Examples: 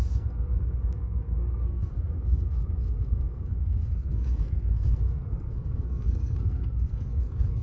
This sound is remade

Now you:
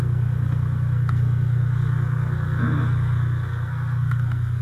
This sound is remade